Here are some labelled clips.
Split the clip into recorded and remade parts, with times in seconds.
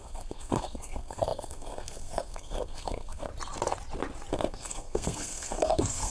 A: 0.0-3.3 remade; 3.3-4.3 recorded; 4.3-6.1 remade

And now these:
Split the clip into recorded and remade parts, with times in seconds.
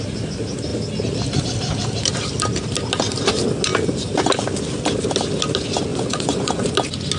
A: 0.0-5.9 recorded; 5.9-6.7 remade; 6.7-7.2 recorded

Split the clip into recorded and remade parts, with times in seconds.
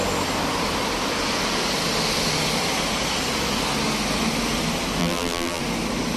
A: 0.0-5.0 recorded; 5.0-5.6 remade; 5.6-6.2 recorded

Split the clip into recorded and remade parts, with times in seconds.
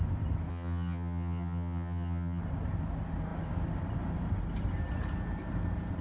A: 0.0-0.5 recorded; 0.5-2.4 remade; 2.4-6.0 recorded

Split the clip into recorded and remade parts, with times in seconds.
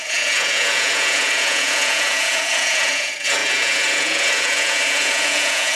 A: 0.0-5.7 remade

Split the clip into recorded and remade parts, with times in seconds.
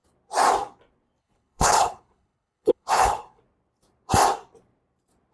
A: 0.0-1.2 recorded; 1.2-3.4 remade; 3.4-5.3 recorded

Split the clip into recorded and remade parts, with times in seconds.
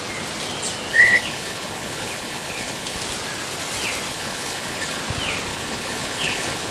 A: 0.0-0.9 recorded; 0.9-3.0 remade; 3.0-4.1 recorded; 4.1-5.0 remade; 5.0-5.5 recorded; 5.5-6.7 remade